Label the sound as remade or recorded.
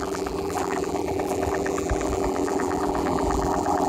remade